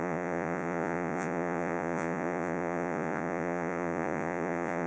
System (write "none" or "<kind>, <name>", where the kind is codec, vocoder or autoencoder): vocoder, Vocos